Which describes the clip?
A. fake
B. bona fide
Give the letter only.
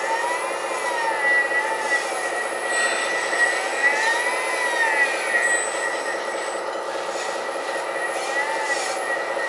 B